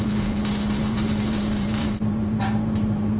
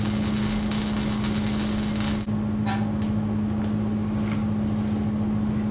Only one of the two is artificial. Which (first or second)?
first